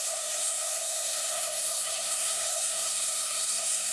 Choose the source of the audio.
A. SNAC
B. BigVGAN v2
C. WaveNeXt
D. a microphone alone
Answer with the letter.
A